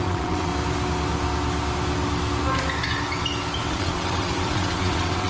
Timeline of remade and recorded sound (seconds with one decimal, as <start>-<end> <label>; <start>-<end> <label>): 0.0-0.5 remade; 0.5-3.7 recorded; 3.7-5.3 remade